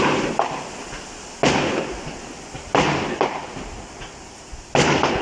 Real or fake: real